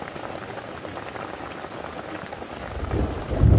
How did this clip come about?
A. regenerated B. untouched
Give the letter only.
B